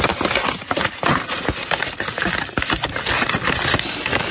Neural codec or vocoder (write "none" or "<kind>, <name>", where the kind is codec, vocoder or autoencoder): none